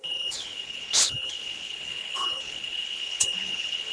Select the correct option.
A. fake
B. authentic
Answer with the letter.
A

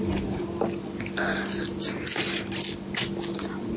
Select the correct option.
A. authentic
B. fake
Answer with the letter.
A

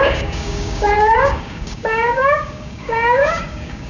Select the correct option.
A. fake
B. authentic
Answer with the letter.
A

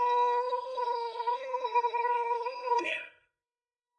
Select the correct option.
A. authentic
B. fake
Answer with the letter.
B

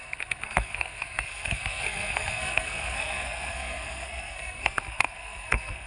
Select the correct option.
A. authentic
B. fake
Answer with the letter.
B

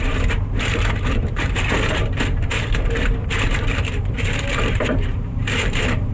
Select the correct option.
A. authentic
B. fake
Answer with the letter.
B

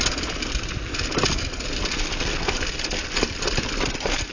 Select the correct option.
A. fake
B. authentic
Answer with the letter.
B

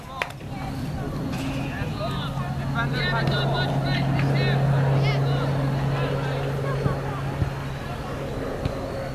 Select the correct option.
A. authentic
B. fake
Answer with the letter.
A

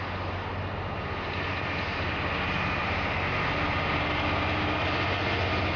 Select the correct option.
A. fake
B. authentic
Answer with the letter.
B